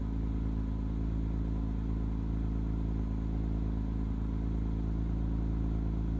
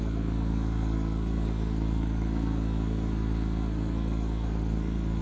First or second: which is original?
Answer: first